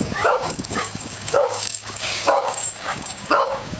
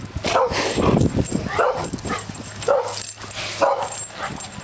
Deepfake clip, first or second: first